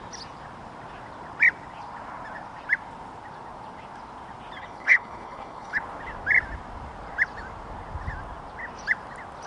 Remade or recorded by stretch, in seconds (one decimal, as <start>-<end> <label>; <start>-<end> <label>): 0.0-4.6 recorded; 4.6-5.8 remade; 5.8-9.5 recorded